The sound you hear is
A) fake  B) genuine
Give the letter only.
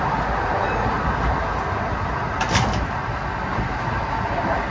B